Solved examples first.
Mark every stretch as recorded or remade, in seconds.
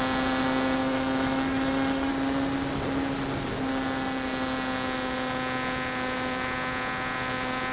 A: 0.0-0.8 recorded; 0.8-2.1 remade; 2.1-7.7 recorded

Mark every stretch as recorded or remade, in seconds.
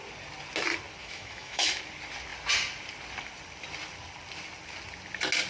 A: 0.0-1.0 recorded; 1.0-1.8 remade; 1.8-5.5 recorded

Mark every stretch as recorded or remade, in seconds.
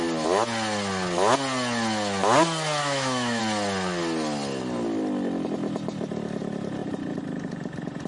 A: 0.0-2.8 recorded; 2.8-3.4 remade; 3.4-8.1 recorded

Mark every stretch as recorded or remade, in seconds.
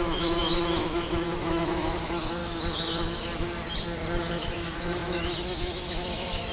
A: 0.0-2.4 remade; 2.4-4.3 recorded; 4.3-6.5 remade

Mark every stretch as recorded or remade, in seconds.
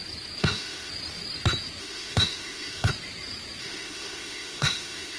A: 0.0-0.4 recorded; 0.4-0.9 remade; 0.9-1.8 recorded; 1.8-2.9 remade; 2.9-3.6 recorded; 3.6-5.2 remade